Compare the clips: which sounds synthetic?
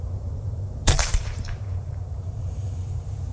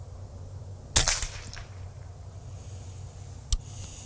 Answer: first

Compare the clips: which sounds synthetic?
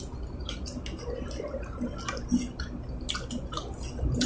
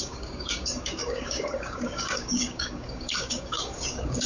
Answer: second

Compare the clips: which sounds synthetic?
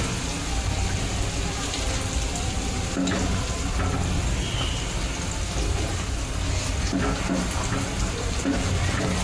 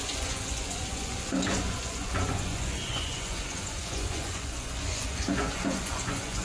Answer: second